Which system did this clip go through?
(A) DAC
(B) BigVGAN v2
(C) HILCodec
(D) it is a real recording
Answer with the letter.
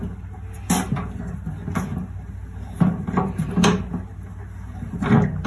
D